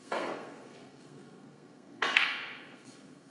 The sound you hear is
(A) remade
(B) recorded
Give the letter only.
A